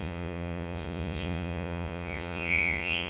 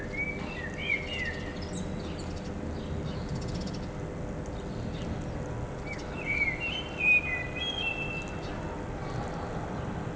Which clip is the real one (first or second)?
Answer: second